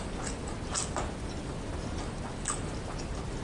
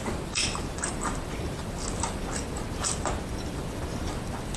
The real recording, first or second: first